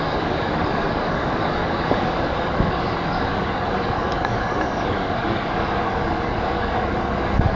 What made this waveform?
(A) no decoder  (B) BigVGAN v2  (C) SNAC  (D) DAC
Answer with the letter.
D